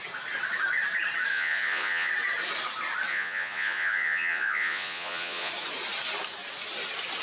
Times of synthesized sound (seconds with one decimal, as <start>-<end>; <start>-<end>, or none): 1.3-2.1; 3.1-5.5